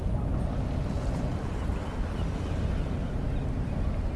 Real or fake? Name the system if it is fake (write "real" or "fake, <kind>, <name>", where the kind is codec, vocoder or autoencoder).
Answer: real